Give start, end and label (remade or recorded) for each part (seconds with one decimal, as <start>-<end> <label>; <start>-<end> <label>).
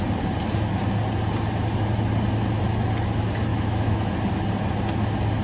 0.0-3.5 recorded; 3.5-4.1 remade; 4.1-5.4 recorded